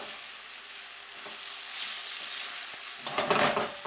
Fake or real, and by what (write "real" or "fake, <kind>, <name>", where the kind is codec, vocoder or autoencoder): real